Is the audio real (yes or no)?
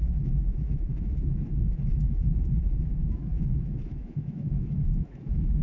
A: no